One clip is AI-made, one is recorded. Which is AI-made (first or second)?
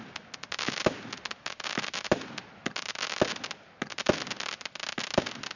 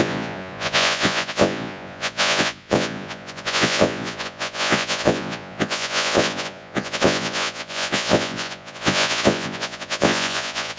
second